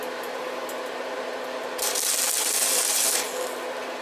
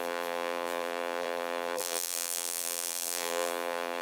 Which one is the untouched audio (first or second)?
first